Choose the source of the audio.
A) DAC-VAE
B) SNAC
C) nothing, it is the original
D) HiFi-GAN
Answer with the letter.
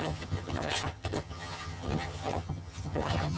D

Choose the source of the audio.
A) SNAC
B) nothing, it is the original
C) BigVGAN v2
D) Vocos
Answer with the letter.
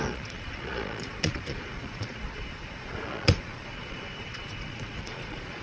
D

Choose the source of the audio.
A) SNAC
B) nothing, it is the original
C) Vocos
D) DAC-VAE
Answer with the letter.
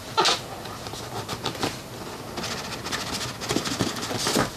B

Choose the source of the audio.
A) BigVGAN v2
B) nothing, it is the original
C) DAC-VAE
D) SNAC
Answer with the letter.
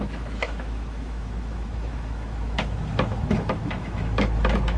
C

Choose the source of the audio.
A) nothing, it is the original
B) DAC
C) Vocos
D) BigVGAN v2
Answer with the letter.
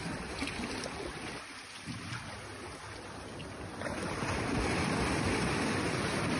A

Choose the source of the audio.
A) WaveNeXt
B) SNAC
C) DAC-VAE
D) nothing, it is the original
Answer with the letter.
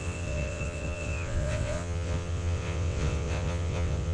A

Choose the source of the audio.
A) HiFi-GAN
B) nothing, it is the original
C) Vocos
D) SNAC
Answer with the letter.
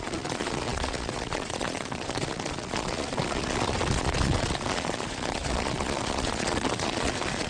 C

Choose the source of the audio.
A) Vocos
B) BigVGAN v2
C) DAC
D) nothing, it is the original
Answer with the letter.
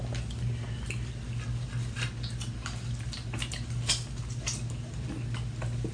D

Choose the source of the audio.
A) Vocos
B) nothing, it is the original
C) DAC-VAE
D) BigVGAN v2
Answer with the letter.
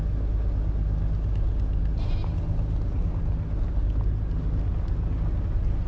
B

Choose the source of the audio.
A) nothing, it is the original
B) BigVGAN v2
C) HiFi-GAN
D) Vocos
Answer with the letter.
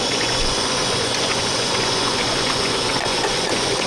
D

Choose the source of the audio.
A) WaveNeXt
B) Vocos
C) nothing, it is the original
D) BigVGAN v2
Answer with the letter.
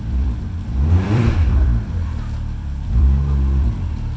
D